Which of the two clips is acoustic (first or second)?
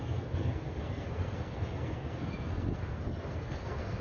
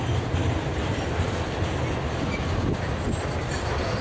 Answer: second